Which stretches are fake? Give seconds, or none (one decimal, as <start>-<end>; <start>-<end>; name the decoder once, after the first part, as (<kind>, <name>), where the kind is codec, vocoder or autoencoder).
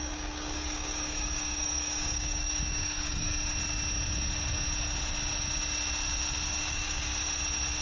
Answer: 0.0-3.3 (codec, DAC); 6.6-7.1